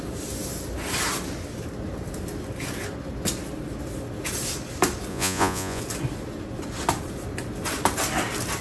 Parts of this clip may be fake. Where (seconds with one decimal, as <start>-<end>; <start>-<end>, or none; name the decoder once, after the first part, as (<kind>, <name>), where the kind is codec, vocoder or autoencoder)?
5.1-5.8 (vocoder, Vocos)